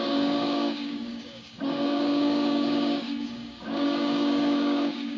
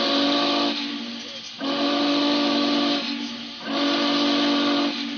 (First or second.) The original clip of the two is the second